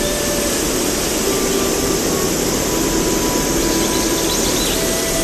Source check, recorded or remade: recorded